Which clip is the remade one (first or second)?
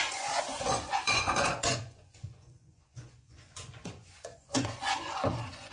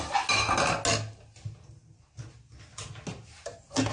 first